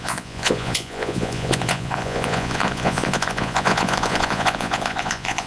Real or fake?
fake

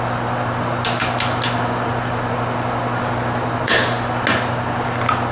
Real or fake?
real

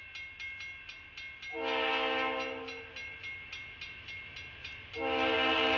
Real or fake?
real